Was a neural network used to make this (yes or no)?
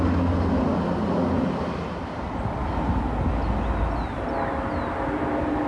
no